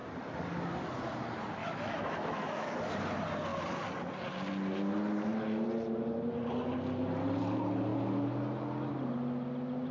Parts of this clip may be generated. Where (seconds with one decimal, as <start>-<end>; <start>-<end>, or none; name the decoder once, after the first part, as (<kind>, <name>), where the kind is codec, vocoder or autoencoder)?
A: 1.6-2.8 (autoencoder, DAC-VAE)